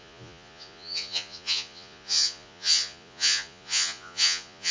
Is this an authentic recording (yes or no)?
no